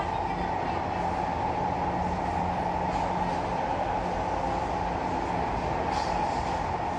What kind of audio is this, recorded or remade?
recorded